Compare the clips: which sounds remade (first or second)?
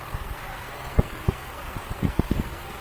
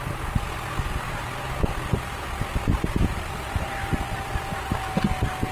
first